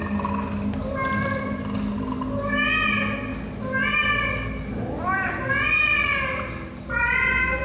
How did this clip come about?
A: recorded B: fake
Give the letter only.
A